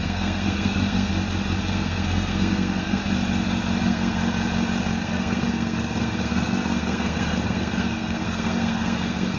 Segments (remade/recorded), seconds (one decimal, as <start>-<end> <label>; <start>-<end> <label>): 0.0-1.1 remade; 1.1-1.6 recorded; 1.6-3.0 remade; 3.0-3.8 recorded; 3.8-4.2 remade; 4.2-5.0 recorded; 5.0-9.4 remade